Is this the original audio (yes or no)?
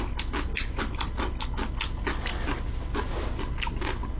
yes